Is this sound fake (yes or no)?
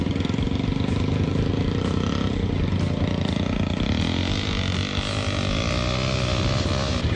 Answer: no